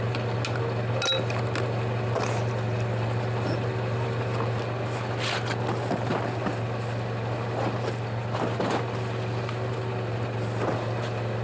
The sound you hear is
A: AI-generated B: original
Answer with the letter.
B